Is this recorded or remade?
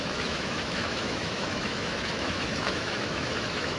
remade